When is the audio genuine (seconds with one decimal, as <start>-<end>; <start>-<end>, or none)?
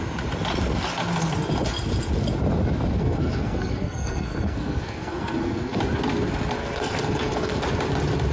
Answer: 0.0-3.0; 5.8-6.6; 7.6-8.3